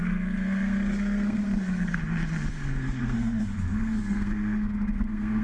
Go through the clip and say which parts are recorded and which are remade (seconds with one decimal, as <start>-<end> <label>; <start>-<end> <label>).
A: 0.0-2.0 remade; 2.0-2.5 recorded; 2.5-5.4 remade